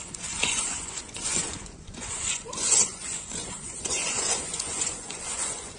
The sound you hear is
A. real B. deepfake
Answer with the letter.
B